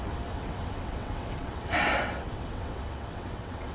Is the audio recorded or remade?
remade